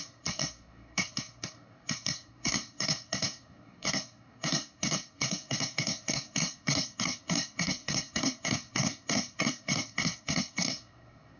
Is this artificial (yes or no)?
yes